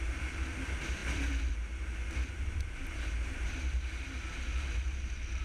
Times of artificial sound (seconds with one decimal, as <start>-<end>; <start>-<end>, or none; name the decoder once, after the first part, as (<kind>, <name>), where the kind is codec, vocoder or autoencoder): none